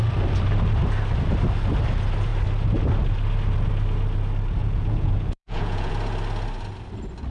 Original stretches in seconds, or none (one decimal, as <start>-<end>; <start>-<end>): 0.0-4.6; 5.9-7.3